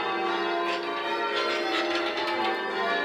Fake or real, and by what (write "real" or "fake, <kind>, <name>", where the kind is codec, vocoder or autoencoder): real